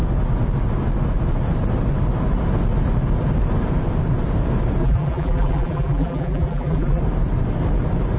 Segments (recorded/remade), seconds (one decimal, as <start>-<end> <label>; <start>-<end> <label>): 0.0-4.8 recorded; 4.8-7.0 remade; 7.0-8.2 recorded